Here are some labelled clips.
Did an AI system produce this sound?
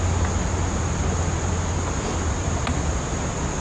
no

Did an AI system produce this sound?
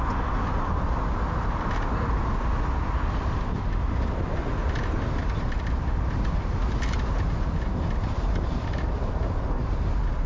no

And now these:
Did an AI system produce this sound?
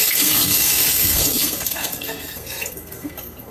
yes